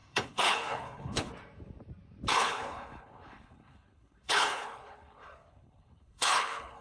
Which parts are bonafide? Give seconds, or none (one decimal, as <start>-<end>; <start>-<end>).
1.3-2.3